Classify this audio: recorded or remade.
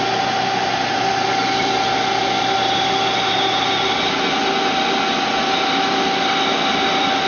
recorded